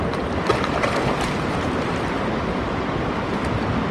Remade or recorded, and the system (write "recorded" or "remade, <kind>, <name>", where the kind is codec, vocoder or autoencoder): recorded